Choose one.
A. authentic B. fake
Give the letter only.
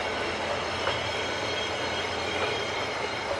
B